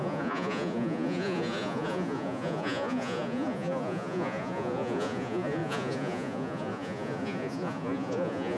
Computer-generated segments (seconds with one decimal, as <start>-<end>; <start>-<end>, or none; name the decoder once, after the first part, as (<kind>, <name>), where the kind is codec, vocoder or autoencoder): 0.0-8.6 (vocoder, Vocos)